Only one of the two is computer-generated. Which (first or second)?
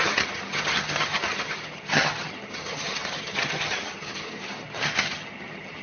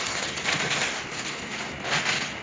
first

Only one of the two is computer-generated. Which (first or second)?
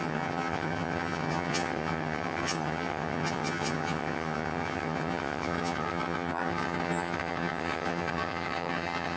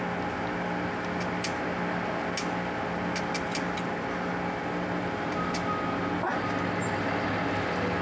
first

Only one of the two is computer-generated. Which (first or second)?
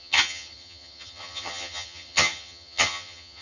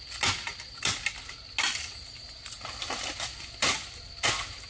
first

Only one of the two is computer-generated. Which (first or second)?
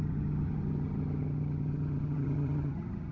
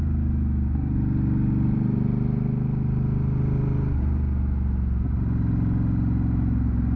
first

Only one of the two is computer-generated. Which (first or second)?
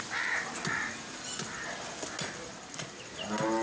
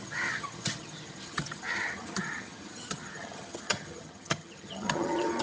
second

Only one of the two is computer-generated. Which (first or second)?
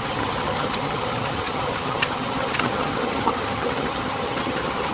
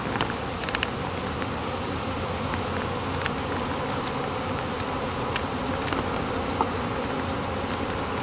first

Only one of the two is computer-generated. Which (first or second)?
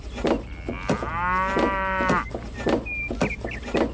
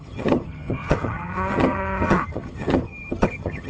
second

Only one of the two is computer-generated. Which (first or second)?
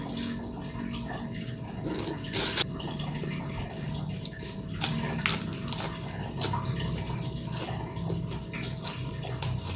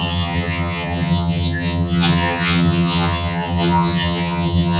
second